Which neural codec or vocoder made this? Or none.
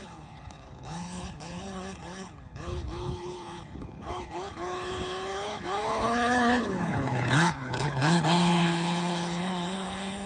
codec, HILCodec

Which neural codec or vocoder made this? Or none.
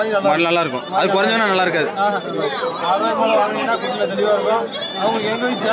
none